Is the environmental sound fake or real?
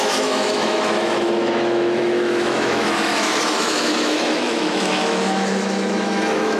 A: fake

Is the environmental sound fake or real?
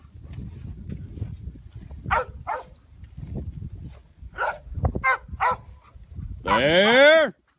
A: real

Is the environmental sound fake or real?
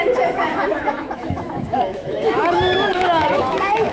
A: fake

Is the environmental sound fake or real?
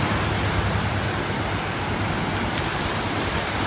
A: real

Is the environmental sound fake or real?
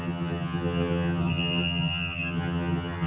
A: fake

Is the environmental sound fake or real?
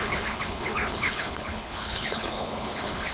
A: fake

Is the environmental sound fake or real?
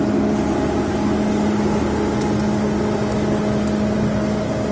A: real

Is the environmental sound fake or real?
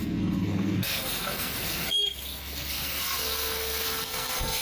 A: fake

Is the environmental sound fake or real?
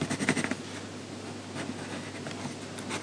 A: real